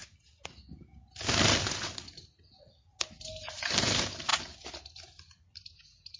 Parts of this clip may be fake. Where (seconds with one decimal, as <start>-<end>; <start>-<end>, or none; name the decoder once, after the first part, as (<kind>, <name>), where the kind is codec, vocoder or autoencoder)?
none